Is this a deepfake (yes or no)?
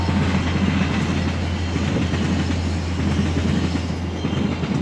no